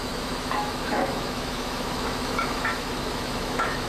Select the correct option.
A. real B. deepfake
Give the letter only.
B